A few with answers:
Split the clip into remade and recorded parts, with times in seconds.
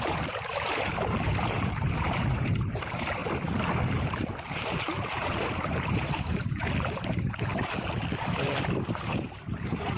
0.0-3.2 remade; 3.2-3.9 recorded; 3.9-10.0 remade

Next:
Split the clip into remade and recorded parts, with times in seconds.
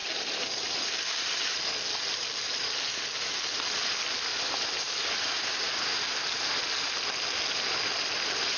0.0-1.3 remade; 1.3-8.6 recorded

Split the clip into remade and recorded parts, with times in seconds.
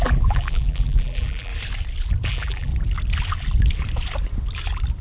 0.0-1.5 remade; 1.5-2.3 recorded; 2.3-2.7 remade; 2.7-5.0 recorded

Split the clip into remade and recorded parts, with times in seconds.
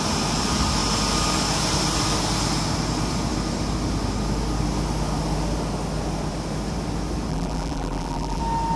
0.0-7.3 recorded; 7.3-8.4 remade; 8.4-8.8 recorded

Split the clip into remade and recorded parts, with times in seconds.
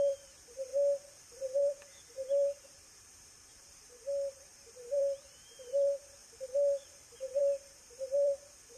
0.0-0.7 remade; 0.7-1.6 recorded; 1.6-6.2 remade; 6.2-7.4 recorded; 7.4-8.8 remade